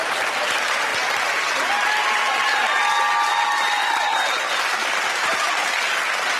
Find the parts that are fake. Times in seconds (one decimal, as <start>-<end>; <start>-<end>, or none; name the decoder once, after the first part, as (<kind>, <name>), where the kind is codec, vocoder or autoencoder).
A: none